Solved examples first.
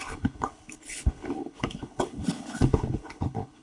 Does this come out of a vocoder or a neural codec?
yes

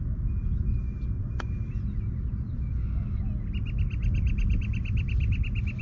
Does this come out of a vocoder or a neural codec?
no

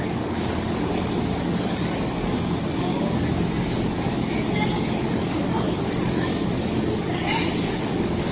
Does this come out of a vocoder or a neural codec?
yes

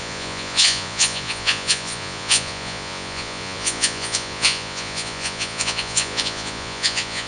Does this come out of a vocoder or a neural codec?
yes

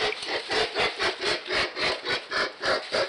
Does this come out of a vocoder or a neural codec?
no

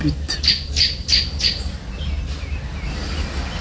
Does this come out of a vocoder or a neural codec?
no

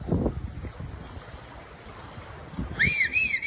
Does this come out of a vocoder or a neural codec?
no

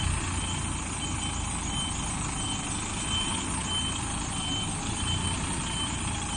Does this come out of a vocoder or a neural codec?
no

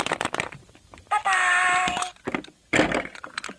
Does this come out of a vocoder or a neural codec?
no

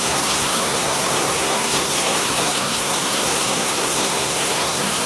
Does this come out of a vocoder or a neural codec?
yes